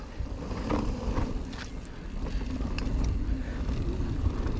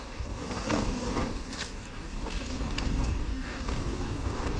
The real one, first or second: first